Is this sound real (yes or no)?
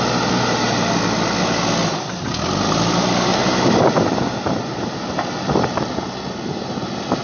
yes